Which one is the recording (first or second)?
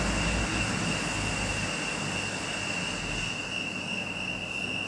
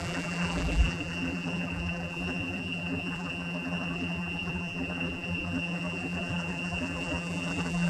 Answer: first